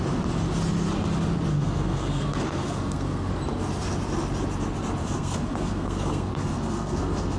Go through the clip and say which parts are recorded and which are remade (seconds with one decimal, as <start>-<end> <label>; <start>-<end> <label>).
0.0-1.5 recorded; 1.5-3.3 remade; 3.3-5.0 recorded; 5.0-7.4 remade